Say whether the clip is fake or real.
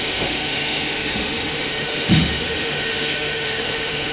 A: fake